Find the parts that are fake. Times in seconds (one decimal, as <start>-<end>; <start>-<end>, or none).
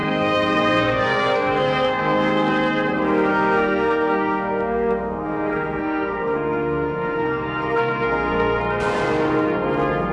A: 0.0-2.5; 3.3-8.6